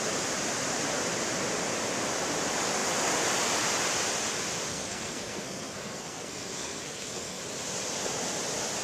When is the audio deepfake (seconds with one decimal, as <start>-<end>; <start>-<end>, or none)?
4.7-7.4